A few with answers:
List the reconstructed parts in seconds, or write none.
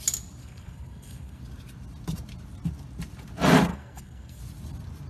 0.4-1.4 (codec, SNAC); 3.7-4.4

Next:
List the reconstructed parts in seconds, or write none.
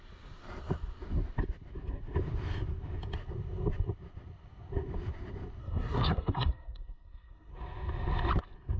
5.6-7.5 (codec, SNAC)